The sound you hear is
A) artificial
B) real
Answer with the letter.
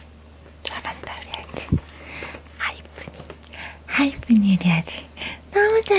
B